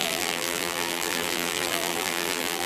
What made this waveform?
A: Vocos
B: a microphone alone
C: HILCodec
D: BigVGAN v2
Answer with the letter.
D